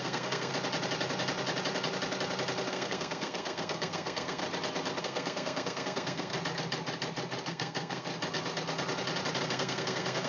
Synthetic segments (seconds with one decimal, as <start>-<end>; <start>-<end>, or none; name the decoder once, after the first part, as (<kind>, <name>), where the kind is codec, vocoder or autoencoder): 0.0-0.5 (codec, SNAC); 2.7-4.4; 5.0-6.3; 7.5-8.1; 9.4-10.3